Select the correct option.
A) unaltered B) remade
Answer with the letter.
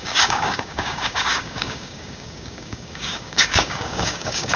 B